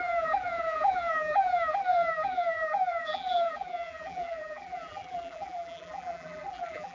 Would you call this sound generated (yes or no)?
yes